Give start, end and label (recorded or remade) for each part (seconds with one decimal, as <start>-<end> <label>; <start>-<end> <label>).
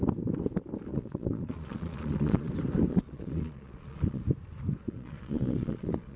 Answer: 0.0-0.9 recorded; 0.9-2.5 remade; 2.5-2.9 recorded; 2.9-4.2 remade; 4.2-4.8 recorded; 4.8-6.2 remade